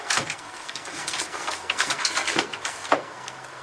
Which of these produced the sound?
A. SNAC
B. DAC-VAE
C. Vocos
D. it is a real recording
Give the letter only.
A